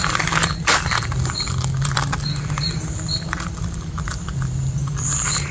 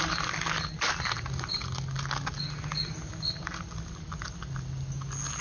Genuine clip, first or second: second